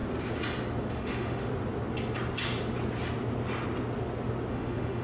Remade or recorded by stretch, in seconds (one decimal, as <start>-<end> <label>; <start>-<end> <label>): 0.0-0.8 recorded; 0.8-1.5 remade; 1.5-4.5 recorded; 4.5-5.0 remade